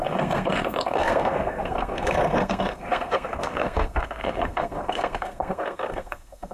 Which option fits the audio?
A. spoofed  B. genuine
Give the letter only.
A